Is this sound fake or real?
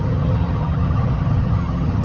fake